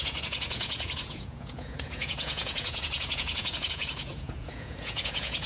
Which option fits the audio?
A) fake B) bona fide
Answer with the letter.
A